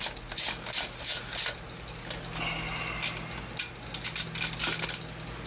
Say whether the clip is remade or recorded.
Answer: recorded